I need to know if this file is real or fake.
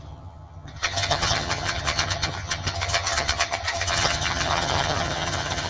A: fake